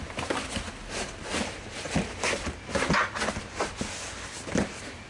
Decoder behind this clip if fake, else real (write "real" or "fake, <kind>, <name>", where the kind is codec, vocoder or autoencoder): real